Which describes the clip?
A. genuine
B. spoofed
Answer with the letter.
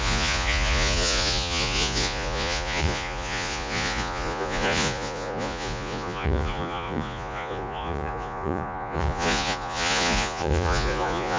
B